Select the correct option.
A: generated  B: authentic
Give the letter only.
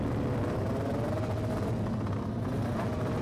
B